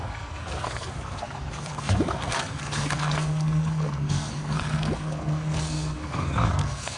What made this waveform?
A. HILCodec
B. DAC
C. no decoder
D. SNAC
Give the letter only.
D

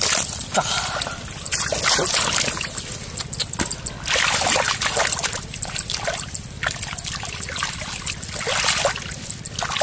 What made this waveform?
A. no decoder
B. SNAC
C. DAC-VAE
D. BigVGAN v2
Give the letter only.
A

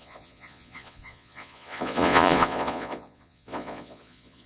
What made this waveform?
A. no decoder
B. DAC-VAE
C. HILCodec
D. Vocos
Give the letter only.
D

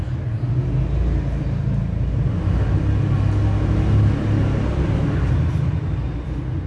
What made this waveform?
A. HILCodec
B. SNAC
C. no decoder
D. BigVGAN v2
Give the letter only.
C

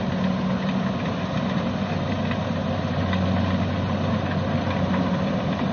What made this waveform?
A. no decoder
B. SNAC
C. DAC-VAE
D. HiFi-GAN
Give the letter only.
A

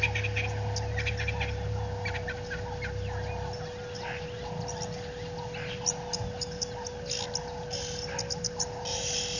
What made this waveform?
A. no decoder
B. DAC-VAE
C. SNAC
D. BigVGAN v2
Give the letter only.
A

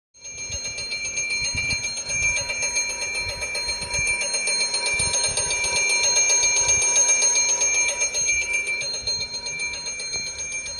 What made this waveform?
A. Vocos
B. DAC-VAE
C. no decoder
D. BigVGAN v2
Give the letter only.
C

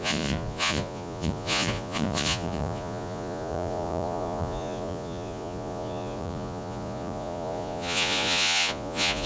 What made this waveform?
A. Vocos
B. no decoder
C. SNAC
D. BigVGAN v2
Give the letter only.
A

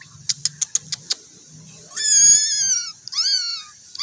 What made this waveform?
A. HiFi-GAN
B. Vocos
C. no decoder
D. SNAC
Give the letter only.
C